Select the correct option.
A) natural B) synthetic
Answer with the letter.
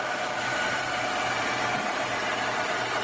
A